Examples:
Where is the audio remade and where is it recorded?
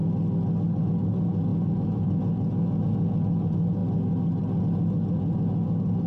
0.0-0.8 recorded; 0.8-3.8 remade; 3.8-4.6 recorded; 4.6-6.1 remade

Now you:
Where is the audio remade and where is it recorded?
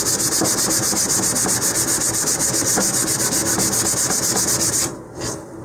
0.0-5.6 recorded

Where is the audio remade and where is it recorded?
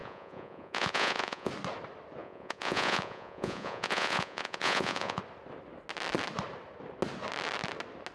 0.0-1.5 remade; 1.5-2.2 recorded; 2.2-5.2 remade; 5.2-8.1 recorded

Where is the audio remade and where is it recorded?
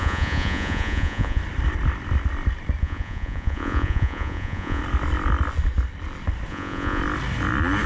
0.0-1.4 remade; 1.4-2.8 recorded; 2.8-4.8 remade; 4.8-6.5 recorded; 6.5-7.0 remade; 7.0-7.9 recorded